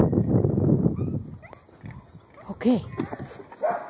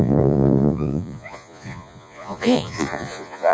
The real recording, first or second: first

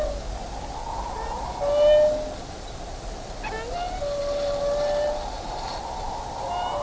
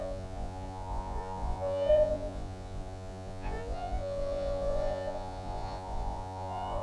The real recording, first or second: first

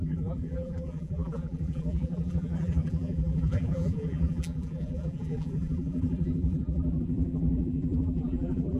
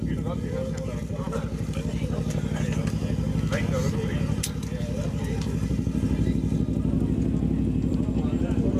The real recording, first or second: second